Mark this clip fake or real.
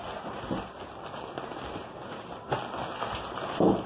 real